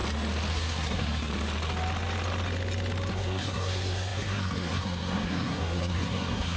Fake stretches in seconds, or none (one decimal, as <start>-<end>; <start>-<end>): 0.5-1.3; 3.1-6.6